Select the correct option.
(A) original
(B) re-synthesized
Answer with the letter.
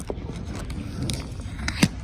A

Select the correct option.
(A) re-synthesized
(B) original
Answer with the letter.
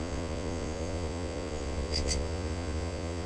A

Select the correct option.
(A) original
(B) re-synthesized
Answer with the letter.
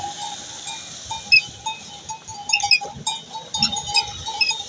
A